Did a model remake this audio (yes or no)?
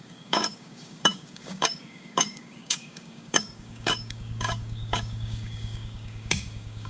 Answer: yes